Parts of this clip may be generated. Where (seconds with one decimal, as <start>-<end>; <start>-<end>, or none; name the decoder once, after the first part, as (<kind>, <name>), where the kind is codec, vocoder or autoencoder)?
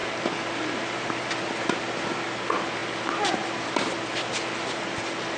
none